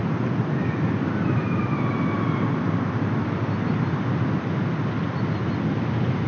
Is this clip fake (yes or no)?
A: no